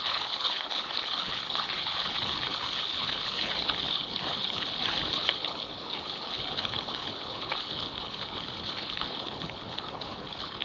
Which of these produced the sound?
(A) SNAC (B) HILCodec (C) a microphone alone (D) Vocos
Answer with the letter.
B